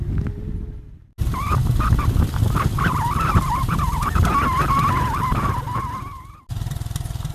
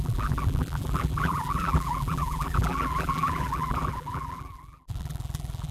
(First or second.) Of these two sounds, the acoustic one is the first